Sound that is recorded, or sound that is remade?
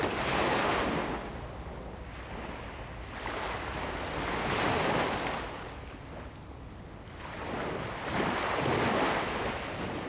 recorded